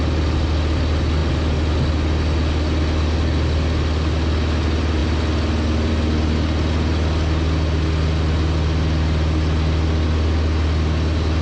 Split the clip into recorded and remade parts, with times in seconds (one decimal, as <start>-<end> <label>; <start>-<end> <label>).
0.0-11.4 recorded